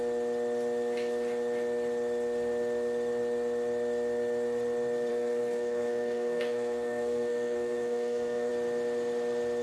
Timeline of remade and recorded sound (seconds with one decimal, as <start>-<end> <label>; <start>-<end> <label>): 0.0-5.1 recorded; 5.1-8.5 remade; 8.5-9.6 recorded